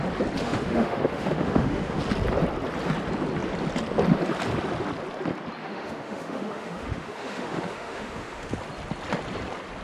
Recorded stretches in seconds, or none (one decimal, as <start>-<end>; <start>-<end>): 0.0-0.4; 2.0-5.6; 8.5-9.8